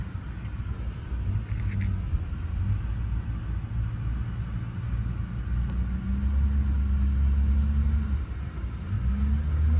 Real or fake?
real